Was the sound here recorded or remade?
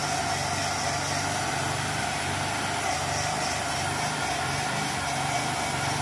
recorded